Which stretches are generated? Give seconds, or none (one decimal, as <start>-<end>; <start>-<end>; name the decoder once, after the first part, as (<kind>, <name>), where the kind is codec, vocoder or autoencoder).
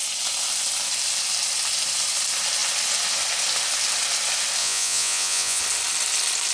4.6-5.6 (vocoder, Vocos)